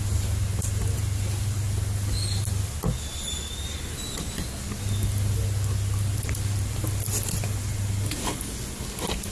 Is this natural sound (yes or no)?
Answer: yes